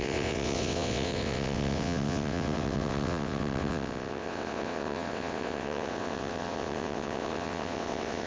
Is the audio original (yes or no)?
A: no